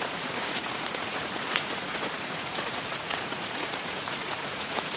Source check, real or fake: fake